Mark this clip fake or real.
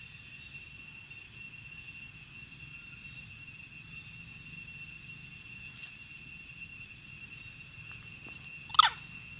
real